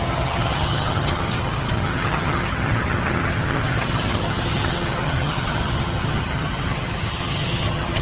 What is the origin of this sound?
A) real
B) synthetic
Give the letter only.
B